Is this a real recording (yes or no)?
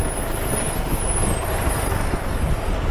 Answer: yes